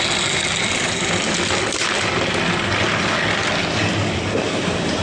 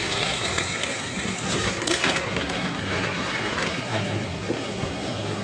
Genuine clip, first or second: first